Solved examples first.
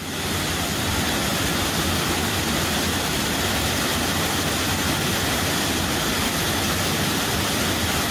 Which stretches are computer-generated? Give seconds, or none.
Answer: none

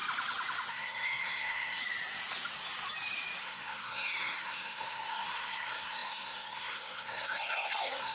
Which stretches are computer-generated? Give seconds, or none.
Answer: 0.7-1.8 (codec, SNAC); 3.4-8.1

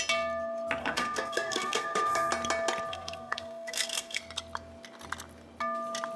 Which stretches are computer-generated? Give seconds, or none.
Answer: 0.8-2.3 (codec, SNAC); 2.9-4.2